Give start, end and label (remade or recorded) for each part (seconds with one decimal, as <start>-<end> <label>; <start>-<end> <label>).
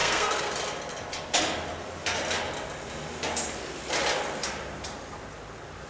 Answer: 0.0-0.5 remade; 0.5-5.9 recorded